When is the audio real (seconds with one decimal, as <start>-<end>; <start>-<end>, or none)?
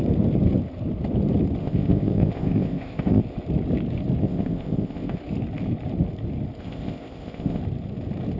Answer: 0.0-1.6; 3.2-4.2; 5.2-6.6; 7.6-8.4